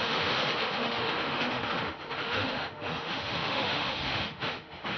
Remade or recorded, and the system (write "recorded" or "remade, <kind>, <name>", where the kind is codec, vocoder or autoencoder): remade, autoencoder, DAC-VAE